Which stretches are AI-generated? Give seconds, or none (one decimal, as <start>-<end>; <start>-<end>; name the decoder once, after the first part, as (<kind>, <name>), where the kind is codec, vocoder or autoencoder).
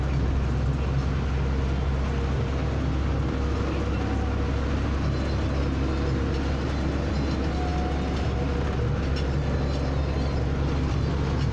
none